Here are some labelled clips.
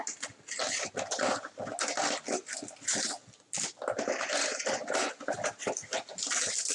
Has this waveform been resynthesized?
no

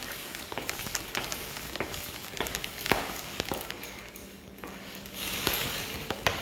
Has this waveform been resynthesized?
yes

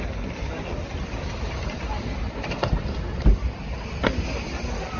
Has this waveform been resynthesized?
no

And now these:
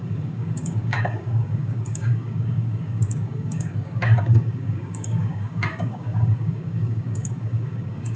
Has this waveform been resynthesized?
yes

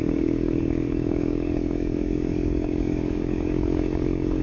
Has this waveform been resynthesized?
yes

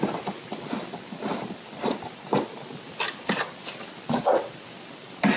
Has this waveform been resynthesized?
no